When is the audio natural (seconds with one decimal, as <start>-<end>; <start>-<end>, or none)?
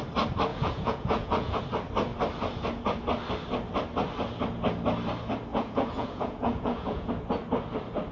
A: 0.0-0.5; 1.6-5.5; 7.1-8.1